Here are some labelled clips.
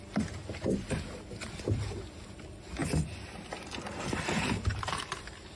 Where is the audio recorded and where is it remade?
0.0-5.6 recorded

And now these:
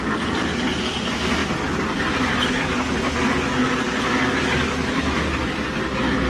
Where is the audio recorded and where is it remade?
0.0-6.3 recorded

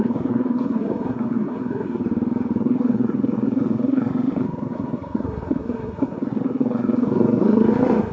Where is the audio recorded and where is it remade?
0.0-2.0 remade; 2.0-2.6 recorded; 2.6-8.1 remade

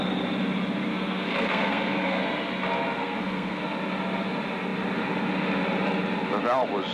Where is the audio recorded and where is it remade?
0.0-0.9 recorded; 0.9-2.2 remade; 2.2-3.0 recorded; 3.0-3.6 remade; 3.6-6.9 recorded

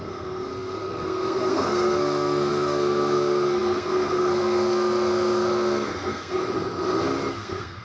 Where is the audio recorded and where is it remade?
0.0-6.4 remade; 6.4-7.3 recorded; 7.3-7.8 remade

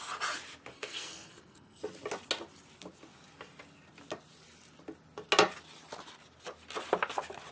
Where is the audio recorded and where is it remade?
0.0-0.7 recorded; 0.7-1.8 remade; 1.8-7.5 recorded

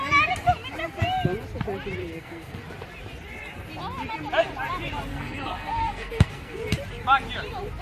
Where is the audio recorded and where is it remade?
0.0-2.0 recorded; 2.0-2.6 remade; 2.6-5.1 recorded; 5.1-6.6 remade; 6.6-7.8 recorded